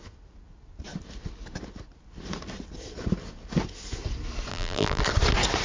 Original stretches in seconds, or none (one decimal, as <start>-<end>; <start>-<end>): 0.0-4.5; 5.0-5.6